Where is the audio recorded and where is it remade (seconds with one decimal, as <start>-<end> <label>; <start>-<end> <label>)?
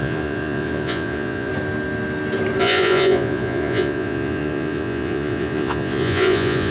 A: 0.0-1.5 remade; 1.5-2.6 recorded; 2.6-6.7 remade